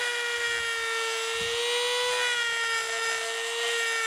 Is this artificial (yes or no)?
no